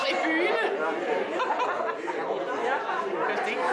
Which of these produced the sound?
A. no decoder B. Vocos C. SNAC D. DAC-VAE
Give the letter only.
A